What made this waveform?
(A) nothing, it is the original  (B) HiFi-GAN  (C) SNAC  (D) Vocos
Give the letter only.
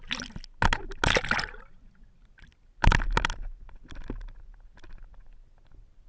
A